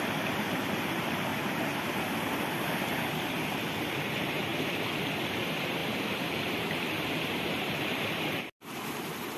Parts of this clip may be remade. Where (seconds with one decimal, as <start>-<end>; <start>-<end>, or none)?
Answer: 0.0-1.3; 3.9-4.5; 5.2-9.4